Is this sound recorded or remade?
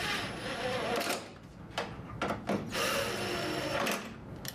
recorded